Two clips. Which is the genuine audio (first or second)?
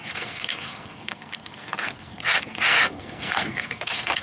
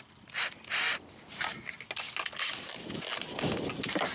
second